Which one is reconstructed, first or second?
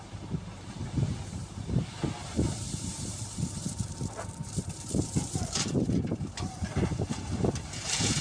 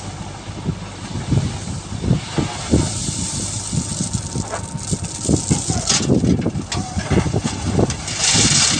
first